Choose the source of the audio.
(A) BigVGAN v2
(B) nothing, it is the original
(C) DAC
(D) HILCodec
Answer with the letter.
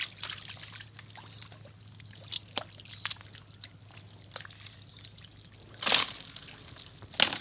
B